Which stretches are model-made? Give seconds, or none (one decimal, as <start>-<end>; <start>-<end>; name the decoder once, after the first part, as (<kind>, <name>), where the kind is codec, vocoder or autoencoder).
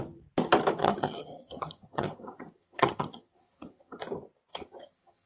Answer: 0.8-4.0 (vocoder, HiFi-GAN); 4.5-5.3